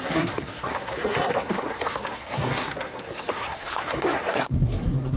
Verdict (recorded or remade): remade